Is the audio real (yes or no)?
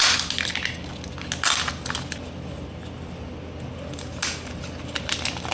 yes